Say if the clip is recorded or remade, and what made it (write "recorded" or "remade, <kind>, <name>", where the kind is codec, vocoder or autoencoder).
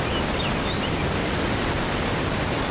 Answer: recorded